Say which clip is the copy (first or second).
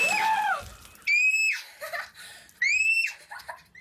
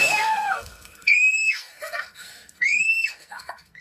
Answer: second